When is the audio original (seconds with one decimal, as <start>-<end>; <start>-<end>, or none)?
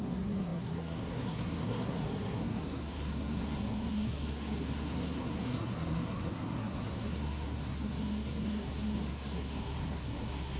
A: none